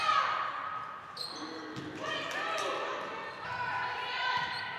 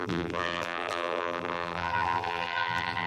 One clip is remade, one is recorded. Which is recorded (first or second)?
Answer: first